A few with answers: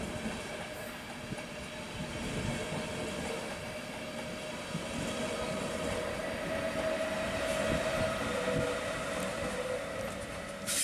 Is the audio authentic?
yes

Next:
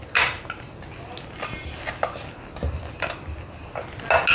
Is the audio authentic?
yes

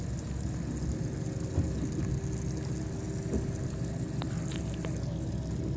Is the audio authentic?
yes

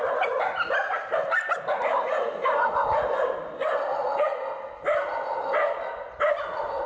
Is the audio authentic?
yes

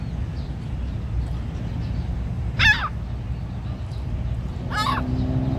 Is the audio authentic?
yes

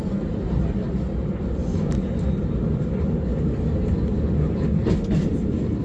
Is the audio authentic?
yes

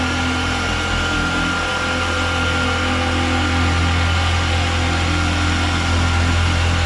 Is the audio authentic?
yes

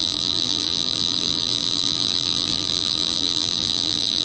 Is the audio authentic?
no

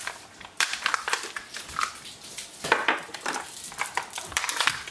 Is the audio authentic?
no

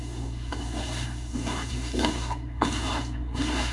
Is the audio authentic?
no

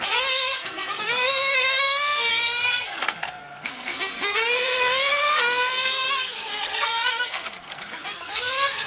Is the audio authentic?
no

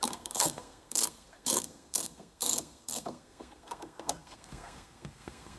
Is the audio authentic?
no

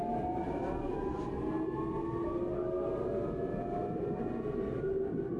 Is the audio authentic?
yes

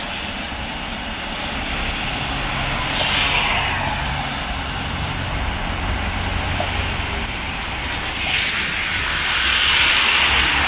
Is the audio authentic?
yes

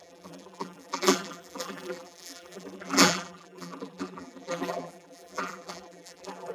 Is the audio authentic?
no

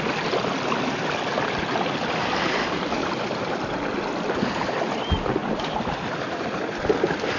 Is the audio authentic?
yes